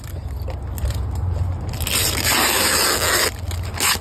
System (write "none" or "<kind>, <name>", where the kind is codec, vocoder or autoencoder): none